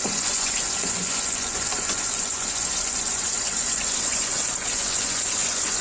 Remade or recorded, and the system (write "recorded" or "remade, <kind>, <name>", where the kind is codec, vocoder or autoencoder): remade, vocoder, Vocos